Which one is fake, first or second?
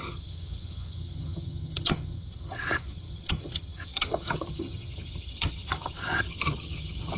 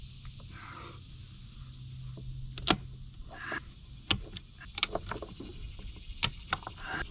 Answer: first